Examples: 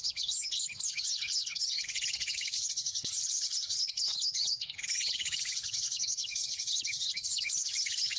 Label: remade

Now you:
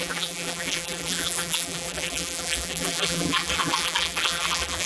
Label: remade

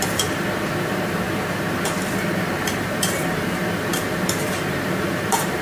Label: remade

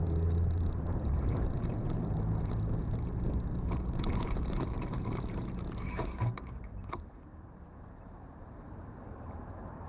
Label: remade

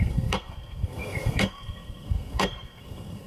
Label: remade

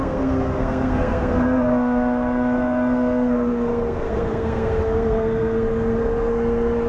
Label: remade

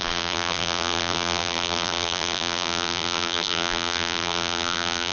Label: remade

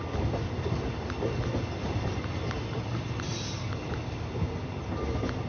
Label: recorded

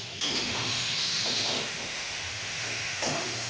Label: remade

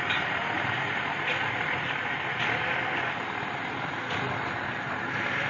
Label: recorded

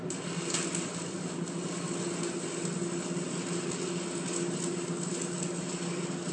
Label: recorded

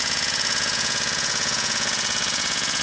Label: remade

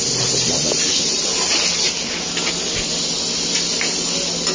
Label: recorded